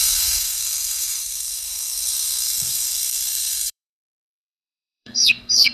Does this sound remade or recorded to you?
remade